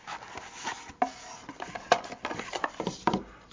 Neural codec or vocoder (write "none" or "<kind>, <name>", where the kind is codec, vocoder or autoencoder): none